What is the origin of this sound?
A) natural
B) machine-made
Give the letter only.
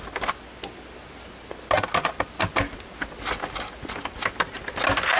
A